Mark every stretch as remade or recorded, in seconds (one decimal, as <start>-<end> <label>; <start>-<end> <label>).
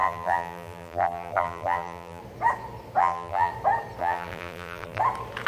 0.0-2.2 remade; 2.2-3.0 recorded; 3.0-3.5 remade; 3.5-4.0 recorded; 4.0-5.0 remade; 5.0-5.5 recorded